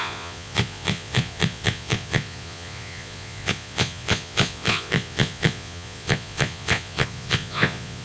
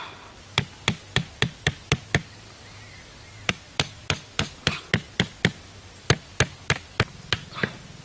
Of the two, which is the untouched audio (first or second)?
second